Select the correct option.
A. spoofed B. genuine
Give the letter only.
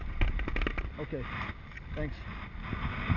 B